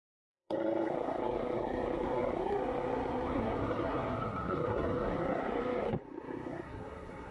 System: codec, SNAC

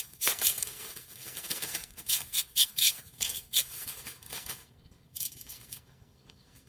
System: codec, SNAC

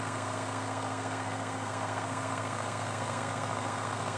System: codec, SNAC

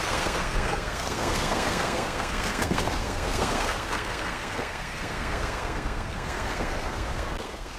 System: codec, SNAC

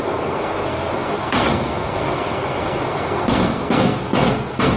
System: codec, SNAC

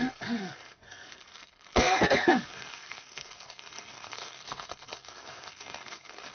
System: codec, SNAC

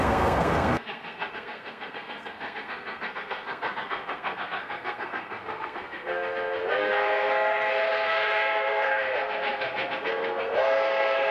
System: codec, SNAC